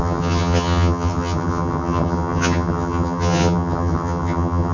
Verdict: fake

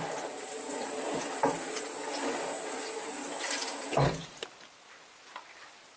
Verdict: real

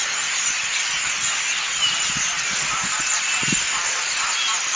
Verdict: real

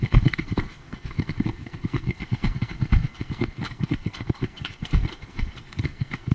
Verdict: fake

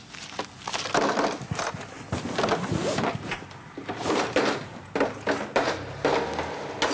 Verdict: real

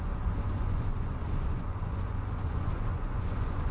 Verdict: fake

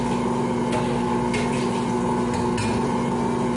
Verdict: real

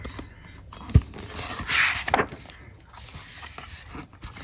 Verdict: real